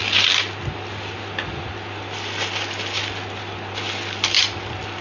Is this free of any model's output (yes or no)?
yes